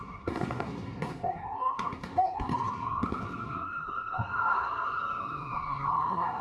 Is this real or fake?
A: fake